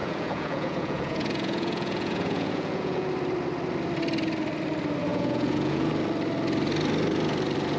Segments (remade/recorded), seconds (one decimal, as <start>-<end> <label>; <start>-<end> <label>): 0.0-3.1 remade; 3.1-5.1 recorded; 5.1-5.9 remade; 5.9-7.8 recorded